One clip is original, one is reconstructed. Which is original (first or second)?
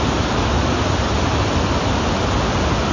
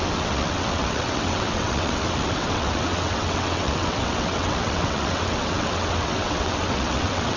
first